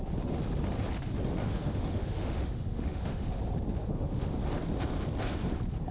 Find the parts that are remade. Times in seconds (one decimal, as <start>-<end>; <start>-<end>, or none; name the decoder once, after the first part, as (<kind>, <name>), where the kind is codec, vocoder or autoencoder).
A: 1.4-3.4 (autoencoder, DAC-VAE); 3.8-4.3